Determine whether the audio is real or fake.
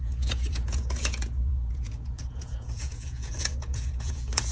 fake